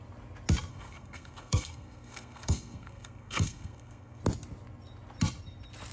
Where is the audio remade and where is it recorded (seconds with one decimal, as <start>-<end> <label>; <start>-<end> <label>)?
0.0-0.7 recorded; 0.7-4.2 remade; 4.2-5.9 recorded